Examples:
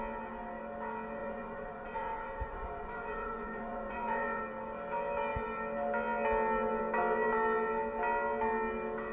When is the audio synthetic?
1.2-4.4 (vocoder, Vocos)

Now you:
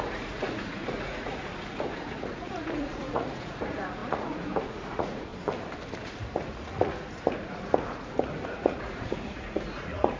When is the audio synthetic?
0.0-5.3 (vocoder, Vocos); 6.0-10.2